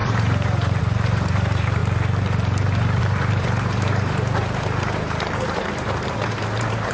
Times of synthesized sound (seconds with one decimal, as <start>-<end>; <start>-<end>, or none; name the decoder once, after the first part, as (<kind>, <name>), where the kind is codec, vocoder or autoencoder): 0.0-1.8 (vocoder, BigVGAN v2); 3.0-6.9